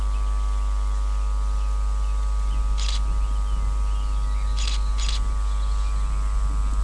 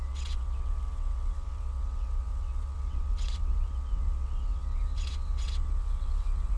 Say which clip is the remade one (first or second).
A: second